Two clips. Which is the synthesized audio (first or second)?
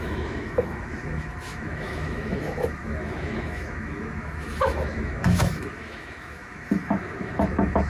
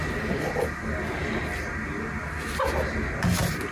first